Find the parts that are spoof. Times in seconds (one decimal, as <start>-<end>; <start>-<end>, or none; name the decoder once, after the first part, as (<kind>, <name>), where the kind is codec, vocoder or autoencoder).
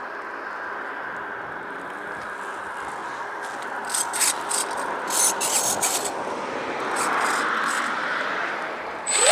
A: 8.1-9.3 (vocoder, BigVGAN v2)